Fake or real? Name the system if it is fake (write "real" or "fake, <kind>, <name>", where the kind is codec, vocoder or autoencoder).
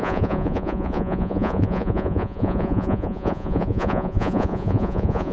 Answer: fake, vocoder, Vocos